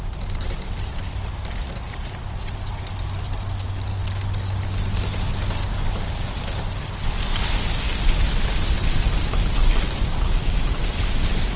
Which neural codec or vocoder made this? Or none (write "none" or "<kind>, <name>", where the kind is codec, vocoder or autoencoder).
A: none